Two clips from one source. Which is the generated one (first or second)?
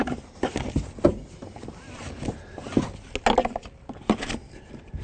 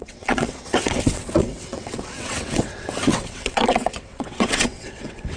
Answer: second